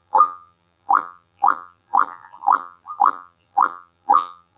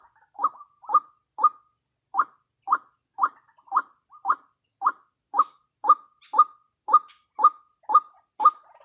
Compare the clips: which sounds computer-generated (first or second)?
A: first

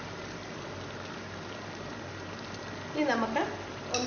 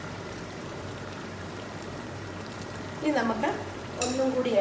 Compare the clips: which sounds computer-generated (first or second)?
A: second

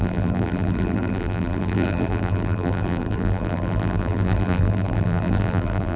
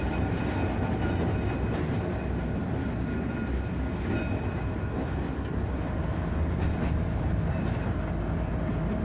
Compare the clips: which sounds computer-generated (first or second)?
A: first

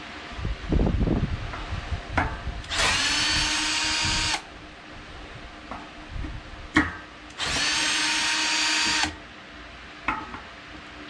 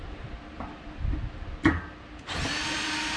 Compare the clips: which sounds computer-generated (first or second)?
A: second